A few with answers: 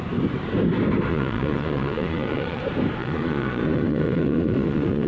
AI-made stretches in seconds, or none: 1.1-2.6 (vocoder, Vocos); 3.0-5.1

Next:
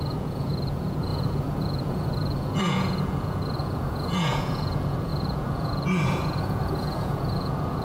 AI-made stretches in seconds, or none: 0.0-7.8 (vocoder, Vocos)

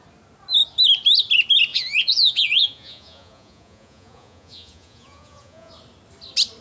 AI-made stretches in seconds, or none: 1.7-5.7 (vocoder, Vocos)